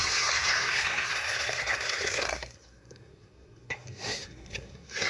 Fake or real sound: fake